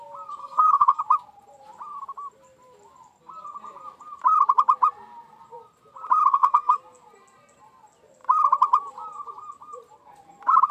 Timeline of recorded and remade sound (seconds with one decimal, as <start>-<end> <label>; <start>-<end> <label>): 0.0-0.4 recorded; 0.4-1.0 remade; 1.0-6.3 recorded; 6.3-6.8 remade; 6.8-10.7 recorded